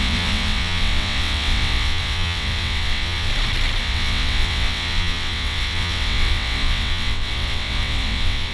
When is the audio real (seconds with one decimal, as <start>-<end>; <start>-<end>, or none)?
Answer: 3.3-3.8